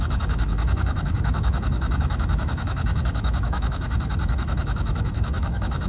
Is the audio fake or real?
fake